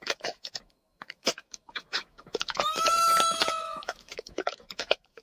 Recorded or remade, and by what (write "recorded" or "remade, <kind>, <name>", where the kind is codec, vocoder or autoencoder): remade, autoencoder, DAC-VAE